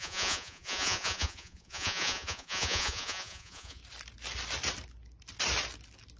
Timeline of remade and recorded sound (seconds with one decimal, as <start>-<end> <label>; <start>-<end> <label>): 0.0-3.8 remade; 3.8-6.2 recorded